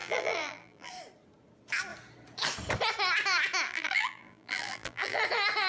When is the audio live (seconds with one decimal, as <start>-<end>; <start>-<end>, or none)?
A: 0.9-3.7; 5.2-5.7